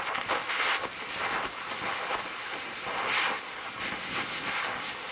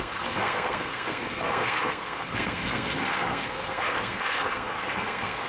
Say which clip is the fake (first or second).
second